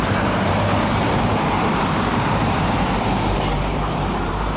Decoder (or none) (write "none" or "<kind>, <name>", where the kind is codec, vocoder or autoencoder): vocoder, BigVGAN v2